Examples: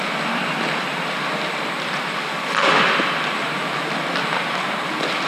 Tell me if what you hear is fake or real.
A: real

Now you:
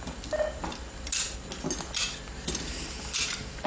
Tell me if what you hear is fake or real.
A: real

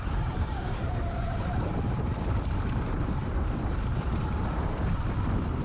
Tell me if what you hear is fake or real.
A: fake